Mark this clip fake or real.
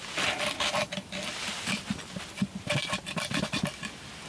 real